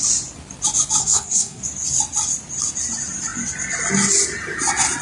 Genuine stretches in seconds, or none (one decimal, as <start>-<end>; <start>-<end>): 0.0-1.0; 1.6-5.0